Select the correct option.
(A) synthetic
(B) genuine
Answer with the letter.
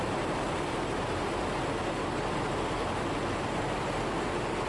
B